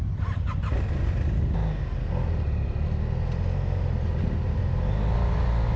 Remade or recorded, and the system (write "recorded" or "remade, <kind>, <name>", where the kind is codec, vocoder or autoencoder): recorded